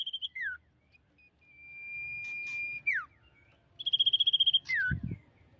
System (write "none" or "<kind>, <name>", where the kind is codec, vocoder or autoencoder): none